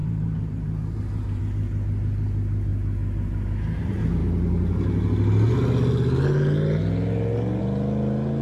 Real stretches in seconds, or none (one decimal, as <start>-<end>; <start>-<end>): 1.4-8.4